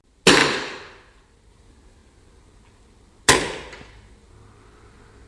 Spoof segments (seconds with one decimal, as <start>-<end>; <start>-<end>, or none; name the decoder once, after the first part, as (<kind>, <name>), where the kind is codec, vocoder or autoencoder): none